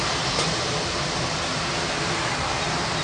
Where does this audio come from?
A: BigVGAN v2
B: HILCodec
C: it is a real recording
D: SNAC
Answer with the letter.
A